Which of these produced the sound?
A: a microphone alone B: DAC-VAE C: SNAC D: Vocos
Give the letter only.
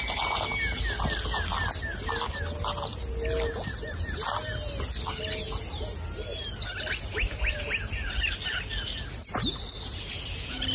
A